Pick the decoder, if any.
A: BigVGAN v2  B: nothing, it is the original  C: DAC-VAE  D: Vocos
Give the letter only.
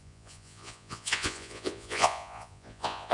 D